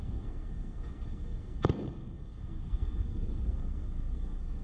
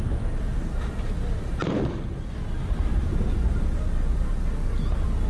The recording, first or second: second